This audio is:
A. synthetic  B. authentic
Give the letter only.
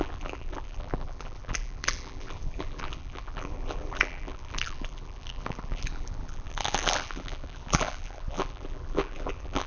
A